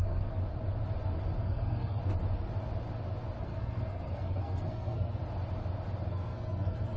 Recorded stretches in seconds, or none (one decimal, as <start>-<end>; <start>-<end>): 0.4-1.4; 2.0-3.4; 5.2-6.1